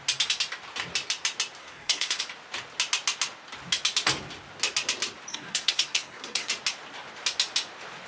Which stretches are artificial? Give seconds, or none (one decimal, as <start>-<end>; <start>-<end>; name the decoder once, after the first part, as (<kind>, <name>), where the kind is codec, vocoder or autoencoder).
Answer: 1.6-2.2 (codec, SNAC); 5.3-6.5

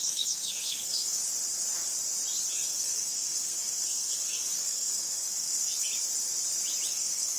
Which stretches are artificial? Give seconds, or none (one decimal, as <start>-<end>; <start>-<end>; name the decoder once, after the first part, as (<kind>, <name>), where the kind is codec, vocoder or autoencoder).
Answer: 0.0-1.2 (codec, SNAC); 2.5-5.9; 6.9-7.4

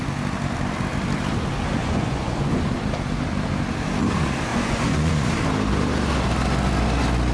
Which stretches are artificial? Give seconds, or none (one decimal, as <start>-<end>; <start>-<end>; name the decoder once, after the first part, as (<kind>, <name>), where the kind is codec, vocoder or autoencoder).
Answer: 1.8-2.6 (vocoder, Vocos); 4.5-5.1

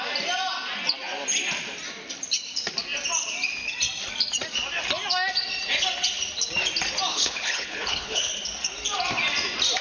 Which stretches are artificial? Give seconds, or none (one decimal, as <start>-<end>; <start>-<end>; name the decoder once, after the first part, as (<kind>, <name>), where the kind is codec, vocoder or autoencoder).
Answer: 7.1-8.3 (codec, HILCodec)

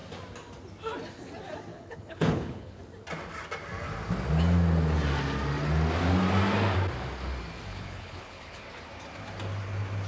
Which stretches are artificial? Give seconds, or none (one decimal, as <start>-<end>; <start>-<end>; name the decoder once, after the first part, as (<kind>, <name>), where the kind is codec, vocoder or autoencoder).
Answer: 1.7-2.8 (codec, HILCodec); 7.7-8.6

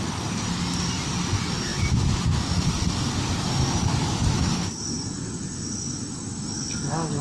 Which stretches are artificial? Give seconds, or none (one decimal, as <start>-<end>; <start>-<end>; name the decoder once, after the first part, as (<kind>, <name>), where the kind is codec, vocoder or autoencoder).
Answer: none

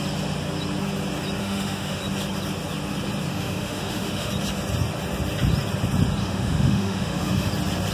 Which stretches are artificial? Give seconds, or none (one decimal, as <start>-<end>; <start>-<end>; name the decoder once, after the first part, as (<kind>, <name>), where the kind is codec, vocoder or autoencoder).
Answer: 1.4-2.0 (autoencoder, DAC-VAE); 3.3-4.3; 6.2-7.5

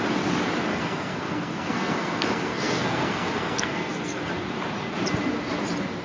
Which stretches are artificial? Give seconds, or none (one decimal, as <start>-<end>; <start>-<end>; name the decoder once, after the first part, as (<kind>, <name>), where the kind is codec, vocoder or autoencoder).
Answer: 0.7-4.3 (codec, SNAC)